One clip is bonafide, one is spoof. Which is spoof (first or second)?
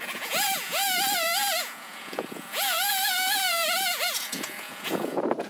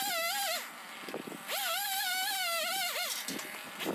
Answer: first